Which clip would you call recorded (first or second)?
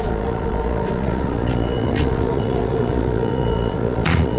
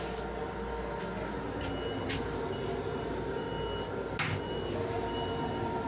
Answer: second